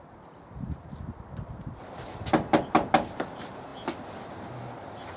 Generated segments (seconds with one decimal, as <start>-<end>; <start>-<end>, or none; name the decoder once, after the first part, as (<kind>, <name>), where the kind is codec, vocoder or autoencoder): none